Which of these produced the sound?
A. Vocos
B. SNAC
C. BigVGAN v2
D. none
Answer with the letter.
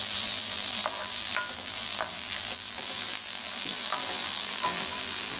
C